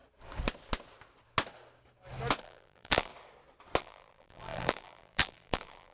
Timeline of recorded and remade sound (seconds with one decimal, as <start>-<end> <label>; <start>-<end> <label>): 0.0-2.4 recorded; 2.4-3.1 remade; 3.1-3.8 recorded; 3.8-5.9 remade